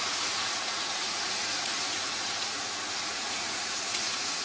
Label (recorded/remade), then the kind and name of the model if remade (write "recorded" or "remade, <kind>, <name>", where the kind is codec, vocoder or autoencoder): remade, vocoder, Vocos